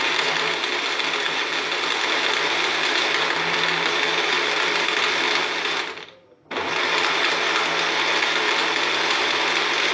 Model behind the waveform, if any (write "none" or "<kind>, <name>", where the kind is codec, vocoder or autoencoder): none